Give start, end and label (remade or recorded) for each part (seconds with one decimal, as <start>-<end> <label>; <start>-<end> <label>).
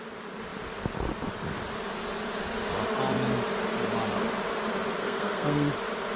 0.0-5.0 recorded; 5.0-5.7 remade; 5.7-6.2 recorded